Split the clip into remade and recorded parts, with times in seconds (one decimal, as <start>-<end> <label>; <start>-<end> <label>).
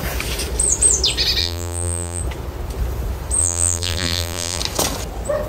0.0-1.4 recorded; 1.4-2.2 remade; 2.2-3.4 recorded; 3.4-4.6 remade; 4.6-5.5 recorded